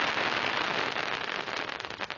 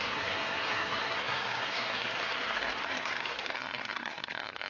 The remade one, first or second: second